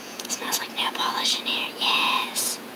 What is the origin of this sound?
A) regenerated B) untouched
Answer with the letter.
A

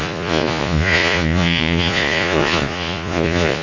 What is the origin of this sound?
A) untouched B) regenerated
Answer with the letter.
B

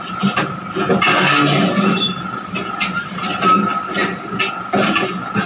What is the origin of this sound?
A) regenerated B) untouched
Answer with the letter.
B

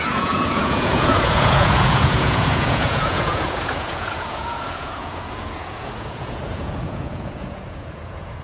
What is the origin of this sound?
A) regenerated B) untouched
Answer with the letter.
A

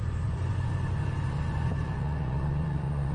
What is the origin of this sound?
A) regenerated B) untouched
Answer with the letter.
A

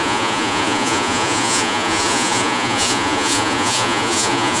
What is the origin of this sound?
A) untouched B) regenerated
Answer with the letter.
B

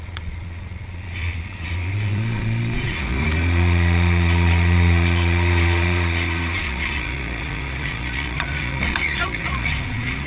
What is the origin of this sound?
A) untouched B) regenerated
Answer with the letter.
B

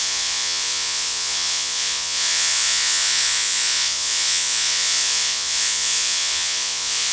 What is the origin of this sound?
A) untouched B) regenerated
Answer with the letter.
B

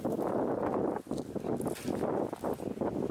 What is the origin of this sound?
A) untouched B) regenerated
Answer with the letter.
A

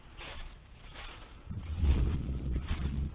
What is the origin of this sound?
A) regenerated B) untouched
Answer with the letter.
A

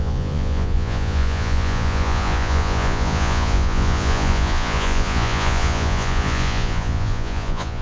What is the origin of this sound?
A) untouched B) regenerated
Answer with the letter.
B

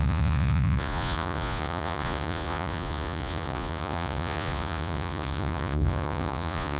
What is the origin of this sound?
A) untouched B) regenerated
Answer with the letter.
B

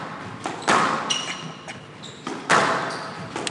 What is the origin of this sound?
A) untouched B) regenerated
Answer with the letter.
A